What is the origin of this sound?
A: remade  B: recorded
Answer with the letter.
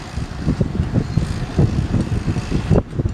B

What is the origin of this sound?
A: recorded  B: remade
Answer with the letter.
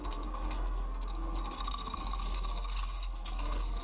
B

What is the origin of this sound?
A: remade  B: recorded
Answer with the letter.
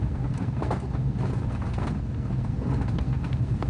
A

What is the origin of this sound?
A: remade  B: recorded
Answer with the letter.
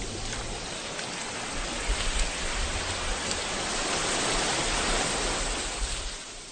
B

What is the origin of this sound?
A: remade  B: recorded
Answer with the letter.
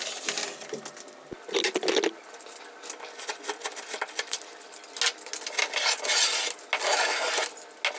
B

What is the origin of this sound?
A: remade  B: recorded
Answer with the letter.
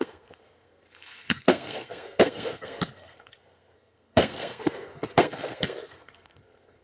A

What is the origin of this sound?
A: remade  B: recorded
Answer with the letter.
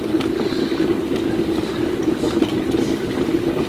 B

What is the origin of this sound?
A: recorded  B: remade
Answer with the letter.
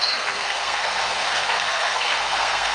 B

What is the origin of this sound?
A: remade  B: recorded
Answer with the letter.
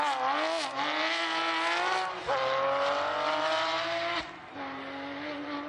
B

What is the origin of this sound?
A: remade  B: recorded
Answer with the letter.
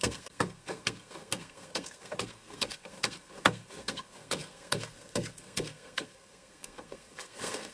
A